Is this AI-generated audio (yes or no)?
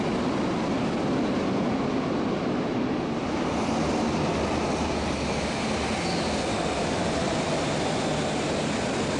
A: no